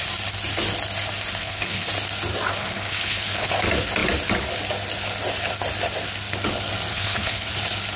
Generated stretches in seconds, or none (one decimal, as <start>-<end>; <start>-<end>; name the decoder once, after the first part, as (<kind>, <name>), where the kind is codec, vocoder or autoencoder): 1.4-1.9 (codec, HILCodec); 2.6-3.5; 6.9-7.5